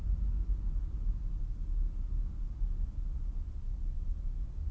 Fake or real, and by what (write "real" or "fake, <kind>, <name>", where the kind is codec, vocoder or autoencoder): real